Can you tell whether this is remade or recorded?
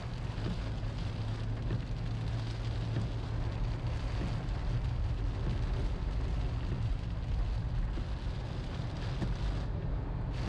recorded